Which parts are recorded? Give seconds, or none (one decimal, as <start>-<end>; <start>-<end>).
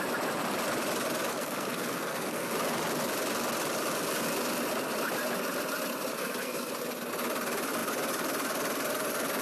0.0-1.3; 2.5-6.1; 6.7-9.4